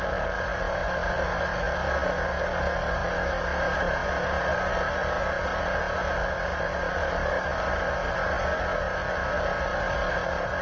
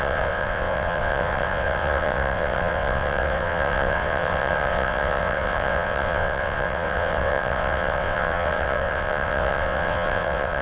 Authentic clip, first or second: first